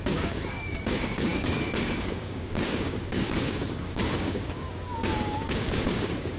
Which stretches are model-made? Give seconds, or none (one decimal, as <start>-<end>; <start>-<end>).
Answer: 0.0-6.4